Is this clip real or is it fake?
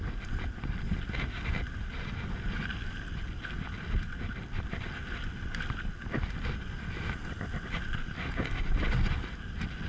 real